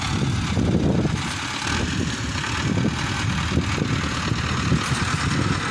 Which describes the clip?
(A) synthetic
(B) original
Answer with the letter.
B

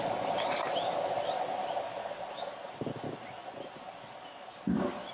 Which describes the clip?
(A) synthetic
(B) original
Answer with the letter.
B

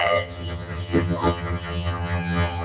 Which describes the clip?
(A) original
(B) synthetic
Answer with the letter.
B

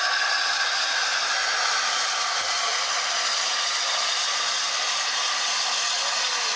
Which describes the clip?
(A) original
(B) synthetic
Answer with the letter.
A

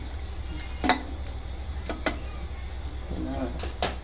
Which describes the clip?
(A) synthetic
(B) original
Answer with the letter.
B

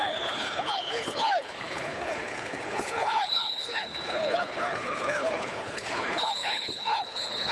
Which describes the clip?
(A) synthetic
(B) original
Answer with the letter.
A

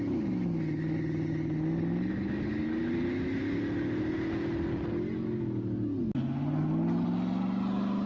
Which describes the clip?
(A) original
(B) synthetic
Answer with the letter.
A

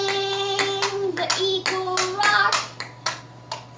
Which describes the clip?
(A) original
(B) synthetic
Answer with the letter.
A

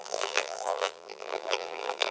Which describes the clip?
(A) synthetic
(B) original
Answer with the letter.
A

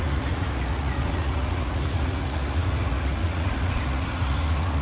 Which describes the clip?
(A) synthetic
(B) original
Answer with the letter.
A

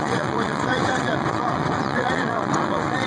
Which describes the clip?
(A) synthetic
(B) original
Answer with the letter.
A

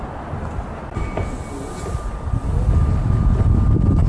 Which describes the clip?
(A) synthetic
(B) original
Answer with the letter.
A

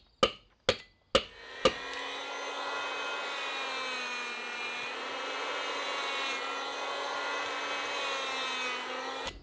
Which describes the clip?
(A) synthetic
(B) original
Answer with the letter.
B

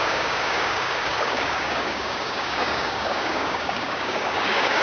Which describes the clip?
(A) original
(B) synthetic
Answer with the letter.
B